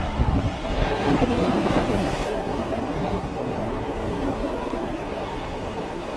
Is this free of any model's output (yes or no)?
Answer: no